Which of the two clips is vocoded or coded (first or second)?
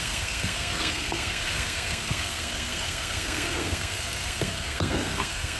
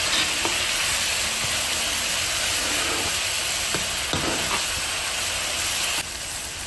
first